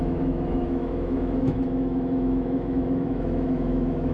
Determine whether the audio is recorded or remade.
remade